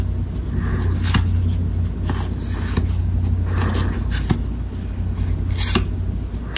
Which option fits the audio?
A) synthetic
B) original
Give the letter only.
B